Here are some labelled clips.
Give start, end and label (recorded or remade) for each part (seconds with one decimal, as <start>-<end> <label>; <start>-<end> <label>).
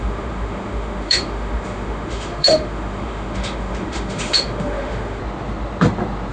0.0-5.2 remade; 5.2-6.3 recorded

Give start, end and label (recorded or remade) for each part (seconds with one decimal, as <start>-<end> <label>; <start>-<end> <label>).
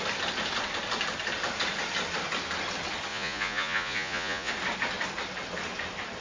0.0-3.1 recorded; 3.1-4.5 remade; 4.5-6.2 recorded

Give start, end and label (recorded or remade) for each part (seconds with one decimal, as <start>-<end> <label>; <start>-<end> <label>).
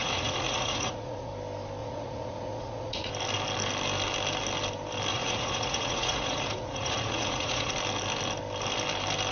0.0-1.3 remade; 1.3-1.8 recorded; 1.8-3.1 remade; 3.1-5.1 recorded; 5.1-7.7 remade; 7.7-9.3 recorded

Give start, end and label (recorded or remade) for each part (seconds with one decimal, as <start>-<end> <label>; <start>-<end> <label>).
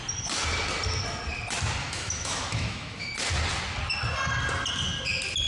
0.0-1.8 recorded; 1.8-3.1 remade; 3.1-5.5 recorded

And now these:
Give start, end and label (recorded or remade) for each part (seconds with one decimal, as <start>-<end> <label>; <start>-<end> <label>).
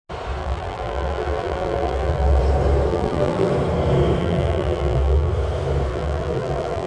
0.0-0.4 recorded; 0.4-2.4 remade; 2.4-2.9 recorded; 2.9-3.5 remade; 3.5-4.2 recorded; 4.2-5.3 remade; 5.3-5.9 recorded; 5.9-6.9 remade